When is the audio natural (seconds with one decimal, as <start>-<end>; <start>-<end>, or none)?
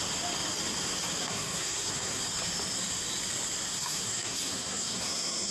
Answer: 0.0-1.2; 2.2-3.7